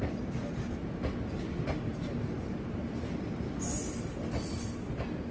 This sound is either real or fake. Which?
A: real